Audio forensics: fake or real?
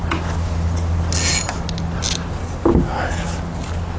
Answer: real